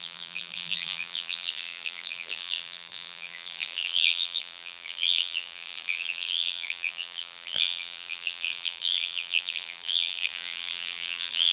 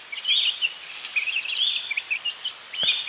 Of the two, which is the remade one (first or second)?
first